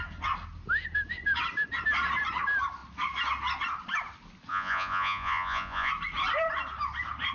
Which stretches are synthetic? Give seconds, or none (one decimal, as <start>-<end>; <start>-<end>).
4.5-5.9